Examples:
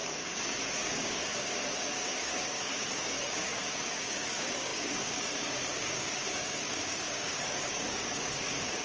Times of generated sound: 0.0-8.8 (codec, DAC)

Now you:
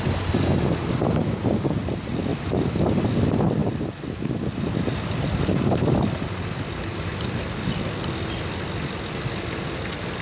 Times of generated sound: 2.3-3.0 (vocoder, BigVGAN v2); 3.6-4.2; 6.9-8.0